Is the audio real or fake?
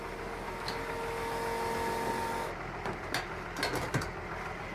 real